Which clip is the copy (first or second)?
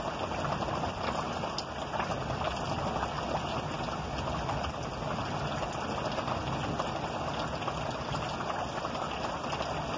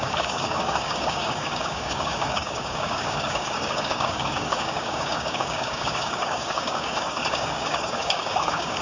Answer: second